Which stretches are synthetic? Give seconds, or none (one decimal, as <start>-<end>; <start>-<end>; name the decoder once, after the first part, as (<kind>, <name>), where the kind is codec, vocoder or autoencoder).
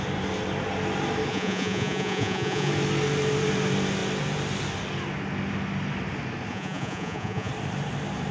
1.3-2.7 (vocoder, Vocos); 6.5-7.5